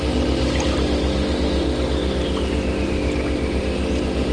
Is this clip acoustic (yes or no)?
yes